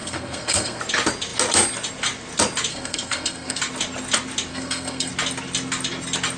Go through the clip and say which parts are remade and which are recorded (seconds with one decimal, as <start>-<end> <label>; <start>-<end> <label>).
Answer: 0.0-0.8 remade; 0.8-2.7 recorded; 2.7-3.6 remade; 3.6-4.5 recorded; 4.5-5.1 remade; 5.1-6.4 recorded